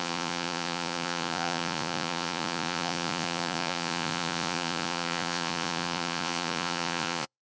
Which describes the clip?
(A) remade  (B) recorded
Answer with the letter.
A